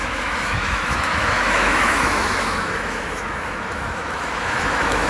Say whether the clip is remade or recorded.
remade